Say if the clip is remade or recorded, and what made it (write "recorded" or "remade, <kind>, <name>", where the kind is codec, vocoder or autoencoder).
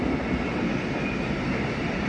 recorded